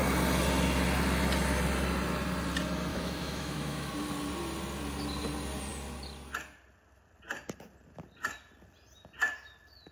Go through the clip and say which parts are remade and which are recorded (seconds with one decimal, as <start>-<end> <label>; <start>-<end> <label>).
0.0-2.9 recorded; 2.9-3.9 remade; 3.9-9.9 recorded